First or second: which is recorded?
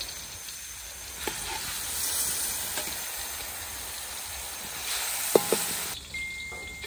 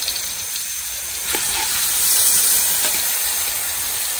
first